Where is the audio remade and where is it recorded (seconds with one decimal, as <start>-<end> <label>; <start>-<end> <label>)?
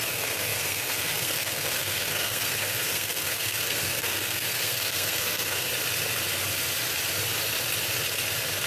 0.0-5.7 remade; 5.7-8.7 recorded